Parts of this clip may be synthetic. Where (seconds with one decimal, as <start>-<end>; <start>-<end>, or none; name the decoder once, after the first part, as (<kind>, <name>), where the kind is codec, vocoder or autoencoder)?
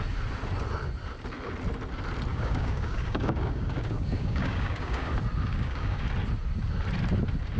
2.3-5.1 (codec, DAC); 5.5-6.1